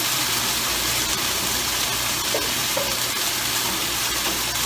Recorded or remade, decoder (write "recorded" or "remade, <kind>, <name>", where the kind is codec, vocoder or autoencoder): recorded